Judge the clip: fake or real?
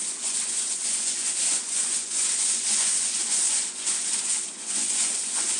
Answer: fake